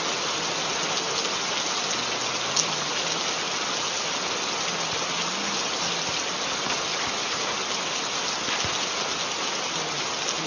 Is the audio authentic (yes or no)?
yes